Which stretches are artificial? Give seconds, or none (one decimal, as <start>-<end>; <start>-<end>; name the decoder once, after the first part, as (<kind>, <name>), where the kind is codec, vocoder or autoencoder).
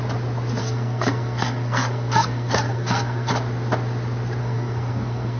0.6-3.3 (codec, SNAC); 4.4-5.4